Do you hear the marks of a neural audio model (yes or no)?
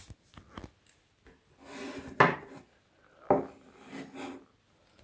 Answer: no